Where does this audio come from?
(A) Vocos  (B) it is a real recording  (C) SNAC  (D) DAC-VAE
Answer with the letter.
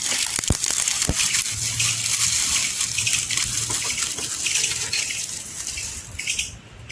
B